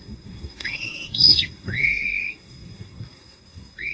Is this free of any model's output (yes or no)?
no